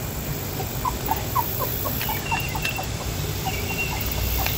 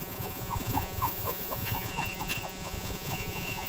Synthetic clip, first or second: second